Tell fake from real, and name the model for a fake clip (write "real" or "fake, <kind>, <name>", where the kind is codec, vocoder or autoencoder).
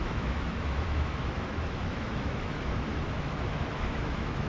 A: fake, autoencoder, DAC-VAE